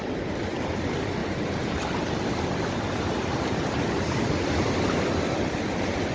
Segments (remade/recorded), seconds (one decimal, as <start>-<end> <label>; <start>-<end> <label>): 0.0-6.1 recorded